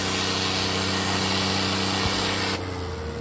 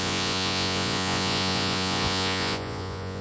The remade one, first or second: second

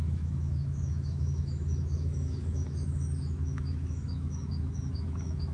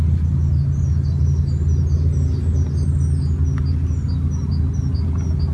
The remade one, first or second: first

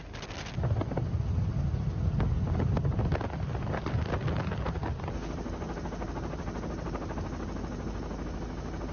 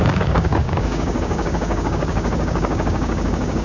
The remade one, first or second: second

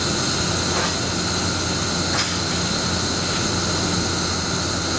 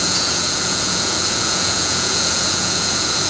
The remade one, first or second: second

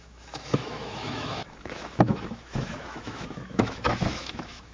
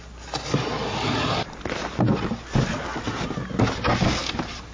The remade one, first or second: first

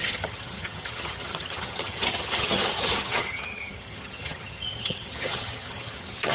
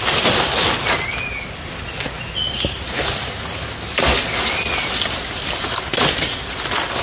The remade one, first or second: first